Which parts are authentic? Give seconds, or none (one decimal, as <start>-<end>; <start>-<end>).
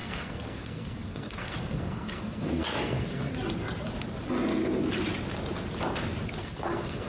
3.3-6.4